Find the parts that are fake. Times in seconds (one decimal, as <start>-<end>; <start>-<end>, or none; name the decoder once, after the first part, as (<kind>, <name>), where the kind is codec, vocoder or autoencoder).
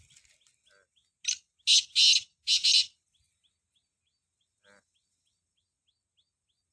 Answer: none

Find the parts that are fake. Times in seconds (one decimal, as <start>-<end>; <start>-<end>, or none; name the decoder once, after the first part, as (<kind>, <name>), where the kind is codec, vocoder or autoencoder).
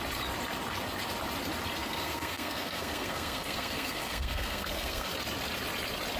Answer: 1.8-5.1 (codec, SNAC)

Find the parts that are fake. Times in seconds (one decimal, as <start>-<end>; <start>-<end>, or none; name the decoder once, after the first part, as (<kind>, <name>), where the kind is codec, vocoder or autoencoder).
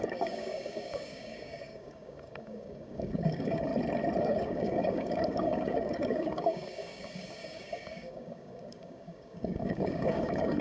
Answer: 0.0-3.7 (codec, DAC); 4.2-10.6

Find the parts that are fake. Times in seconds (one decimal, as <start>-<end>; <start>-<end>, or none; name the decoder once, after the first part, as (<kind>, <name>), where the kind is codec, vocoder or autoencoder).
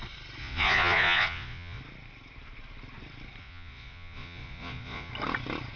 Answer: 0.4-1.8 (vocoder, Vocos); 3.4-5.1